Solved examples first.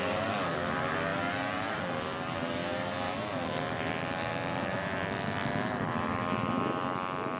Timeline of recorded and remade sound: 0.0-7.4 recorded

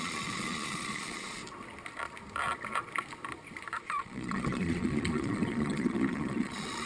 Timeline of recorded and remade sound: 0.0-1.4 remade; 1.4-3.8 recorded; 3.8-6.9 remade

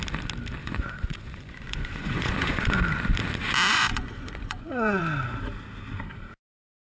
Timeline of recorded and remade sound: 0.0-0.6 recorded; 0.6-2.7 remade; 2.7-3.7 recorded; 3.7-5.0 remade; 5.0-6.9 recorded

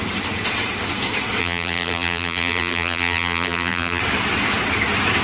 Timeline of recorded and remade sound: 0.0-1.4 recorded; 1.4-4.0 remade; 4.0-5.2 recorded

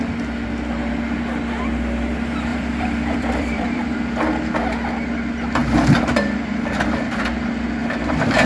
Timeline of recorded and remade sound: 0.0-2.5 recorded; 2.5-4.0 remade; 4.0-7.8 recorded; 7.8-8.5 remade

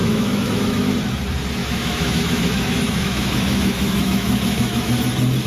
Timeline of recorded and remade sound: 0.0-0.9 remade; 0.9-1.6 recorded; 1.6-4.9 remade; 4.9-5.5 recorded

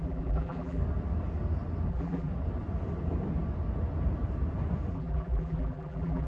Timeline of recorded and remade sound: 0.0-0.8 remade; 0.8-1.9 recorded; 1.9-2.3 remade; 2.3-4.9 recorded; 4.9-6.3 remade